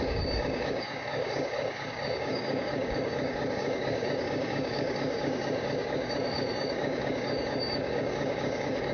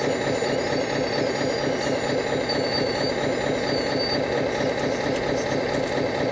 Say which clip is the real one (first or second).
second